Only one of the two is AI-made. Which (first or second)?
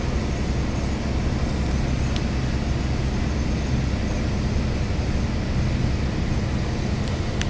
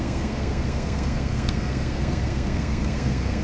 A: second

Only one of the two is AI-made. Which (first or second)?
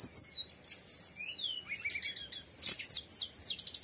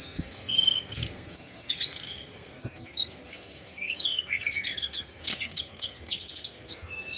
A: second